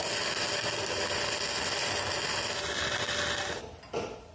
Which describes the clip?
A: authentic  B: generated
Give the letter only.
A